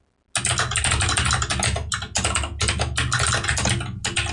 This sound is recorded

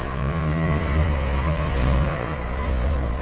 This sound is remade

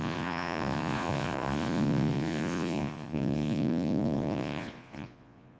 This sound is remade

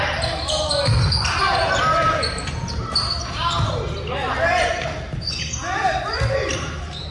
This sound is recorded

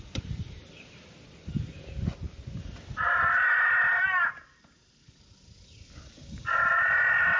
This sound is recorded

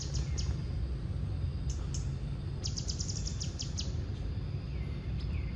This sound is recorded